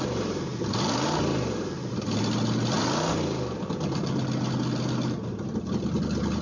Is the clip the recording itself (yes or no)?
yes